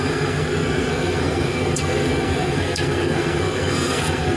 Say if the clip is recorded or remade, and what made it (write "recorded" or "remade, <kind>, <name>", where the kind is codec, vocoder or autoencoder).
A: remade, codec, SNAC